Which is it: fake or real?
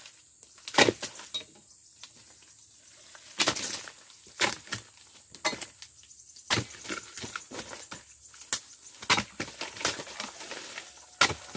real